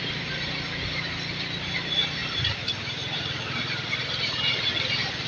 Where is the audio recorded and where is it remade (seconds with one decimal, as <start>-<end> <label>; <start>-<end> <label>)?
0.0-2.2 recorded; 2.2-5.3 remade